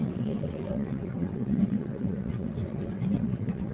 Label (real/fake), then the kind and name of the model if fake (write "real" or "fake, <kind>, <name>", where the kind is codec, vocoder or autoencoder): fake, vocoder, WaveNeXt